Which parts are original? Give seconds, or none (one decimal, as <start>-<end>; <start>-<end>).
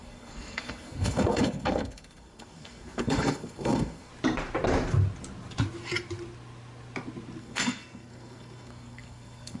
4.1-7.4